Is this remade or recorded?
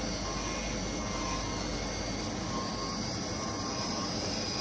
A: recorded